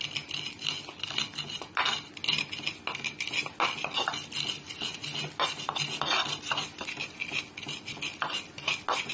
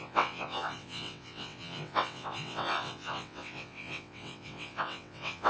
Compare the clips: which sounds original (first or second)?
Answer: first